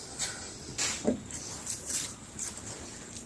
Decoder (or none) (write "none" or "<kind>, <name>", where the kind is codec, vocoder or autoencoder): none